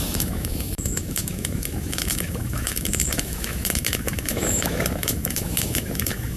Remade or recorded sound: remade